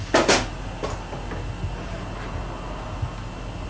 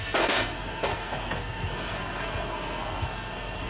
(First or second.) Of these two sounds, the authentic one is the first